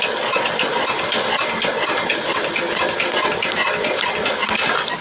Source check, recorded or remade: recorded